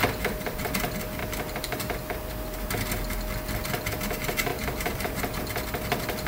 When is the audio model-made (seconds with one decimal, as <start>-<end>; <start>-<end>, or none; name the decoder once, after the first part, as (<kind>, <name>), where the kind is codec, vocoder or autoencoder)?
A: 1.2-2.7 (vocoder, BigVGAN v2); 4.5-5.4